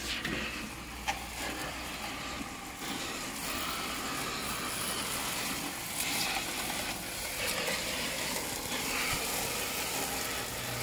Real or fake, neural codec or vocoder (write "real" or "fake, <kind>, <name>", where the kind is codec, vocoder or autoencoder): real